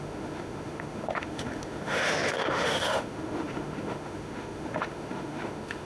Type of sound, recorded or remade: remade